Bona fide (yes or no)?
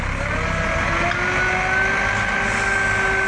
yes